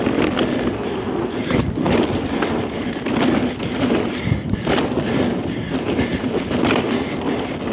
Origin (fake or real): real